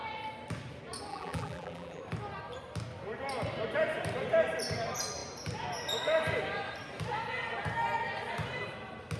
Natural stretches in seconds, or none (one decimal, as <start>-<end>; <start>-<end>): 0.0-1.1; 2.0-9.2